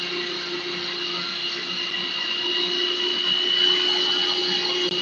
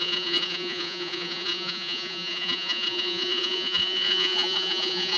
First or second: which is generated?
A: second